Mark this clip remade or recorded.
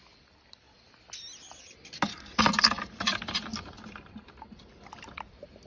recorded